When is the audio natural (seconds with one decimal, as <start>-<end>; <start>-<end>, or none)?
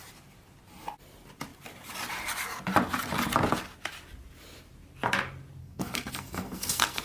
0.0-5.6